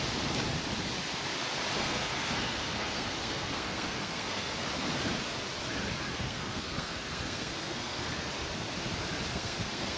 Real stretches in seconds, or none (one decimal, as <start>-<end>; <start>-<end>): 0.0-1.8; 4.5-6.1; 8.3-9.3